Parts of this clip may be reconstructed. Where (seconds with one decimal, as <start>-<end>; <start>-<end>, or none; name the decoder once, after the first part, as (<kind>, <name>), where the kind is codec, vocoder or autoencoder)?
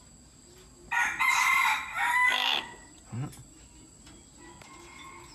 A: none